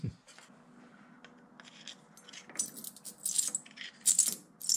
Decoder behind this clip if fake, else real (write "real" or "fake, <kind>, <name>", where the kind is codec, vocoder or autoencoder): real